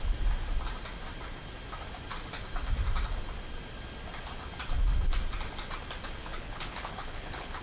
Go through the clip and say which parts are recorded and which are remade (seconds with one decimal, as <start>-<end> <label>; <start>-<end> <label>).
0.0-6.2 recorded; 6.2-7.6 remade